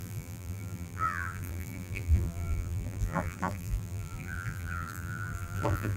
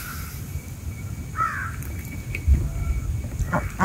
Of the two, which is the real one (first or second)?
second